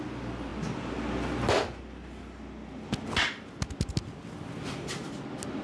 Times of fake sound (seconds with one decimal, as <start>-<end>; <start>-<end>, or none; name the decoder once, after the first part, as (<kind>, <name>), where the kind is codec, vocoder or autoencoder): none

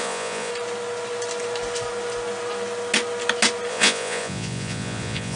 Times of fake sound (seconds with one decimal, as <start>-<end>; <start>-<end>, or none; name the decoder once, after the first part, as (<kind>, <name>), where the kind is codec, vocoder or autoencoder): 0.0-0.5 (vocoder, Vocos); 3.7-5.4

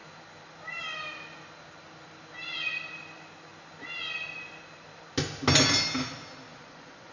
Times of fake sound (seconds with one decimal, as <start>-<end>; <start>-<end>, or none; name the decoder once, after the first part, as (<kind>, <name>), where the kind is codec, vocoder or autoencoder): 6.5-7.1 (vocoder, Vocos)

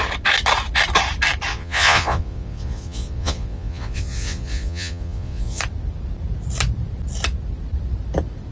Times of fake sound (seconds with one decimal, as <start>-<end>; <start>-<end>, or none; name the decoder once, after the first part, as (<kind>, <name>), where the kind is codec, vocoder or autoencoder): 1.5-5.6 (vocoder, Vocos)

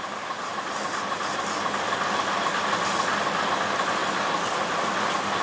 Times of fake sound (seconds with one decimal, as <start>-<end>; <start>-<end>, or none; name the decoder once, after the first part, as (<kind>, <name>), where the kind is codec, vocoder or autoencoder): none